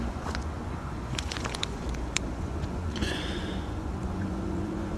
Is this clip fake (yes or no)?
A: yes